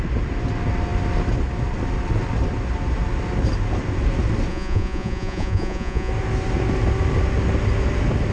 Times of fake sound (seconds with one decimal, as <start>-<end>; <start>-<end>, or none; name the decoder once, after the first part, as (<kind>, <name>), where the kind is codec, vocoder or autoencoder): 4.5-6.1 (vocoder, Vocos)